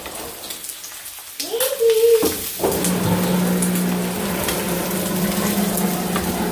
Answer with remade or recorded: recorded